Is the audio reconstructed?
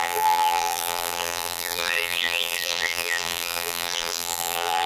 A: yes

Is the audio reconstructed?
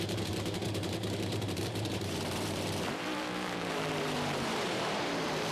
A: yes